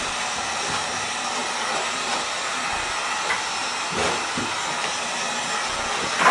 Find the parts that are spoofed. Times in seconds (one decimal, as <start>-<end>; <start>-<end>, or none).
none